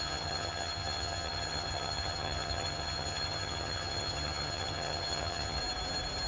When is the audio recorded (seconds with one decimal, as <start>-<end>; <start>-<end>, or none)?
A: 5.6-6.3